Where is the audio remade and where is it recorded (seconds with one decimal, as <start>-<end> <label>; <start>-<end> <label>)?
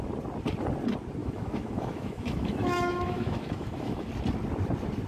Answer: 0.0-1.2 recorded; 1.2-4.1 remade; 4.1-5.1 recorded